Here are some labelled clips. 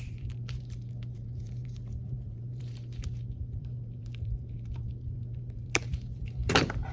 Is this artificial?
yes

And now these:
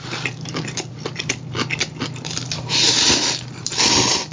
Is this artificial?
yes